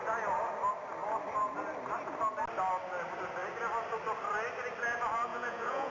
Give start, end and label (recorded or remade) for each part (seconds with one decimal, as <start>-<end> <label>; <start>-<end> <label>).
0.0-5.3 recorded; 5.3-5.9 remade